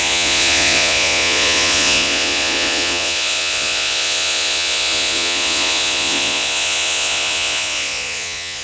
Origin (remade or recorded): remade